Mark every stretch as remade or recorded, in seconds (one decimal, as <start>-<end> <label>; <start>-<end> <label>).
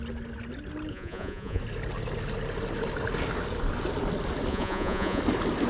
0.0-0.9 recorded; 0.9-1.6 remade; 1.6-4.5 recorded; 4.5-5.2 remade; 5.2-5.7 recorded